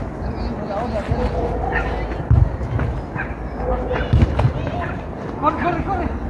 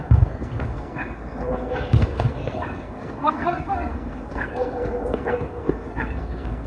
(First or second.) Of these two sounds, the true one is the first